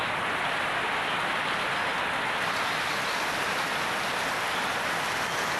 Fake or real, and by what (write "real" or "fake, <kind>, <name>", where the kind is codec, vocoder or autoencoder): real